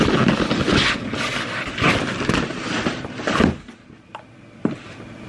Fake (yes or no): no